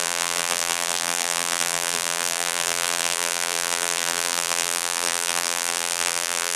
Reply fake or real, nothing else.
fake